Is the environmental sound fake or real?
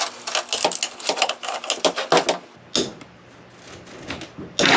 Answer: real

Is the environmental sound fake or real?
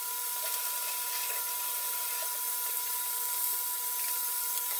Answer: real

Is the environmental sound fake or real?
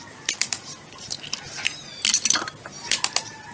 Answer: real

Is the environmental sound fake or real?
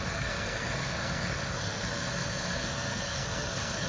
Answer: fake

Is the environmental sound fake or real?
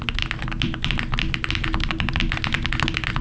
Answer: real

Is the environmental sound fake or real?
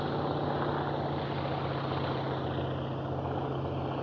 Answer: real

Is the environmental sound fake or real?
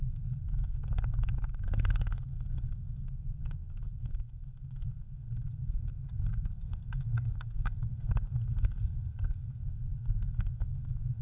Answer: fake